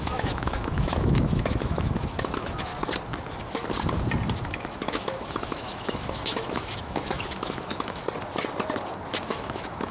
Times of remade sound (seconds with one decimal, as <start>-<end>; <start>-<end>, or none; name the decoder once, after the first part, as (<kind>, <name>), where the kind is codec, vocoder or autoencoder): 0.0-2.7 (autoencoder, DAC-VAE); 4.4-8.0; 9.3-9.9